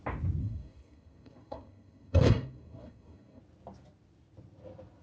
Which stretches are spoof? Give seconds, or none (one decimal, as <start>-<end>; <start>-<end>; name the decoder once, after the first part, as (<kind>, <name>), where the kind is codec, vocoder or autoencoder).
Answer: 0.4-3.4 (codec, SNAC)